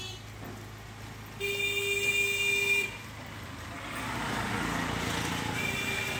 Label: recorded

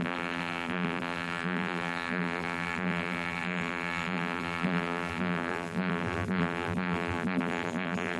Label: remade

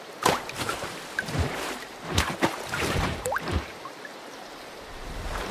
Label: remade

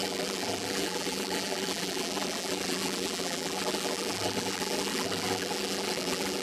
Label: remade